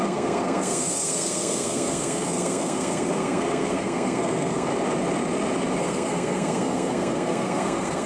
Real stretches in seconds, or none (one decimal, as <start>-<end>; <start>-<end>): 4.7-5.8